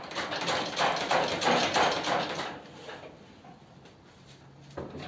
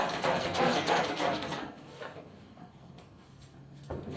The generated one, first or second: second